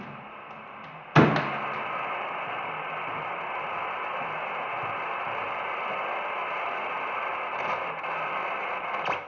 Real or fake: real